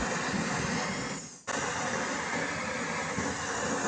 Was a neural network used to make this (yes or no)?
no